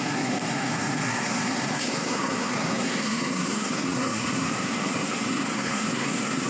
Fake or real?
fake